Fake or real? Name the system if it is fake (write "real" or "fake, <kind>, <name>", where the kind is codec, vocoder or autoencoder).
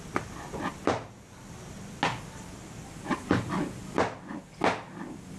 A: real